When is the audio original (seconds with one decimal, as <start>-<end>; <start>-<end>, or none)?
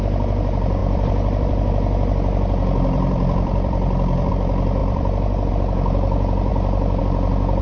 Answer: 0.0-0.8; 4.3-4.8; 5.5-7.6